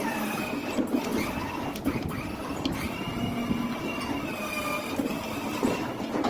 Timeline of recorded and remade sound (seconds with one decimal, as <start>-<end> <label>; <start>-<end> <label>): 0.0-6.3 recorded